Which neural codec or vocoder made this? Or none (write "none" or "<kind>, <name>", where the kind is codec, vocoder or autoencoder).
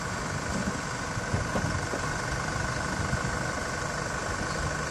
none